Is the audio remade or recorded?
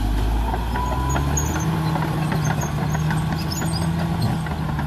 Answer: recorded